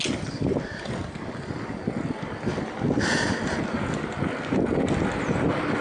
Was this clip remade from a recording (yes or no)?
no